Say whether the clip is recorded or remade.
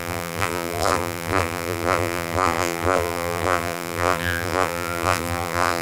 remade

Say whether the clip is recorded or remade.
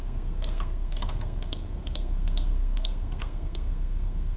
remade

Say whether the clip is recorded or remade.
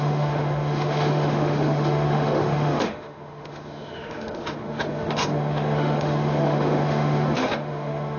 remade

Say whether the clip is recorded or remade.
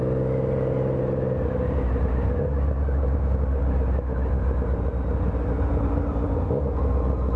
recorded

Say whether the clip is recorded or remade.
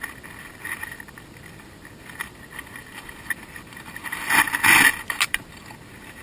recorded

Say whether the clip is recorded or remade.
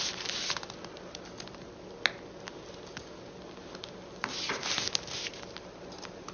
recorded